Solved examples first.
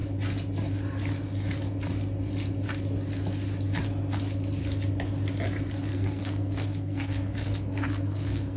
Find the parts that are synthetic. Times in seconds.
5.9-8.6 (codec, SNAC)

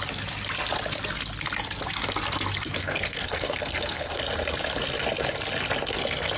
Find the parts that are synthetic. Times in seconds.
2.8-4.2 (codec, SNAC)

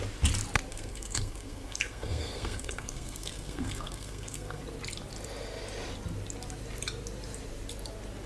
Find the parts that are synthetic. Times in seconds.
0.7-4.6 (codec, SNAC)